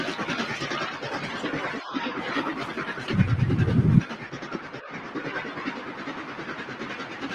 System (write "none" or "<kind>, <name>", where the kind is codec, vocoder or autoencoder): none